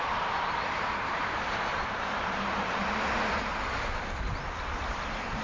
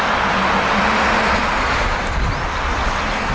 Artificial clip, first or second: first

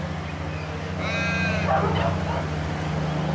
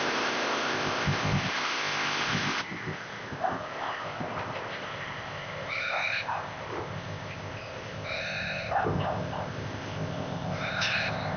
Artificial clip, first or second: second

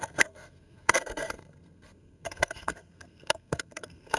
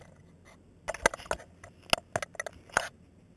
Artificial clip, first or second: first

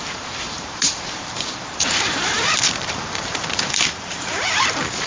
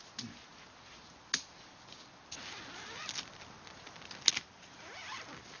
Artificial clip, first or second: first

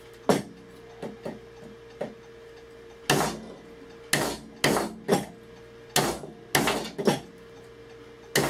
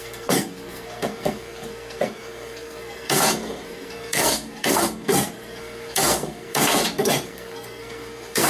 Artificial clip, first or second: second